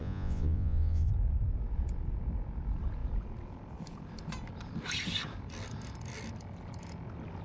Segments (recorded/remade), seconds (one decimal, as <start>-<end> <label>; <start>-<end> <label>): 0.0-1.1 remade; 1.1-7.4 recorded